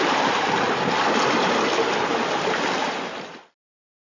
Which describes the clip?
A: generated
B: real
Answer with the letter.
B